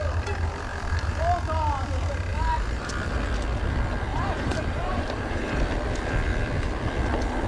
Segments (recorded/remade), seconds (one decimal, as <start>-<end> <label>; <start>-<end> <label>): 0.0-0.7 recorded; 0.7-1.2 remade; 1.2-2.3 recorded; 2.3-2.9 remade; 2.9-4.1 recorded; 4.1-5.6 remade; 5.6-7.5 recorded